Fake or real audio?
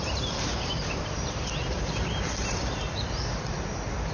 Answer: fake